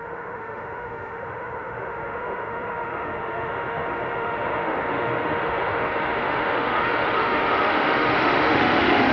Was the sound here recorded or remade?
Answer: remade